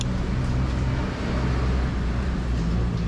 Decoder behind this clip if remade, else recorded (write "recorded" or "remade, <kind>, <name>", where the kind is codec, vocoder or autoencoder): recorded